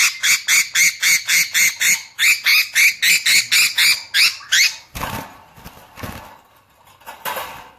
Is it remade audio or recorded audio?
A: recorded